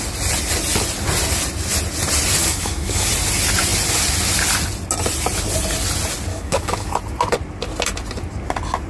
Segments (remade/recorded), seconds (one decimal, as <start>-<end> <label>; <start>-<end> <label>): 0.0-2.4 recorded; 2.4-3.1 remade; 3.1-6.3 recorded; 6.3-7.0 remade; 7.0-8.9 recorded